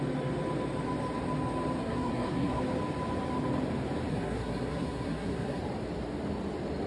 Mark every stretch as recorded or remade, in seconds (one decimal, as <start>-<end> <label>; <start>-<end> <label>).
0.0-1.8 recorded; 1.8-2.6 remade; 2.6-4.1 recorded; 4.1-5.6 remade; 5.6-6.9 recorded

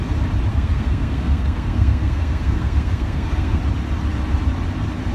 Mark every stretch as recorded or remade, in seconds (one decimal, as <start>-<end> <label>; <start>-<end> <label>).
0.0-0.5 recorded; 0.5-3.6 remade; 3.6-5.1 recorded